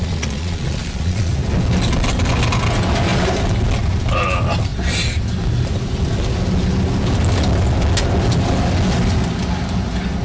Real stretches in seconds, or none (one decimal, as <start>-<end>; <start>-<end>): 1.3-10.2